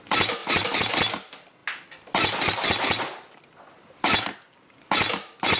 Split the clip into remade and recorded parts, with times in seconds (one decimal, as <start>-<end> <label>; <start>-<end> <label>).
0.0-0.4 recorded; 0.4-1.0 remade; 1.0-5.6 recorded